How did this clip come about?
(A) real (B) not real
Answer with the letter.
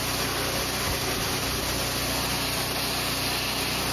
A